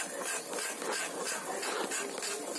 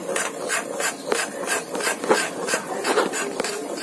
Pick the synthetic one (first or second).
second